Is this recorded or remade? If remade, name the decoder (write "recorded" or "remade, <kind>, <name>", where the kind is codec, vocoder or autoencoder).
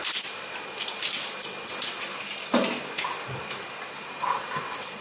recorded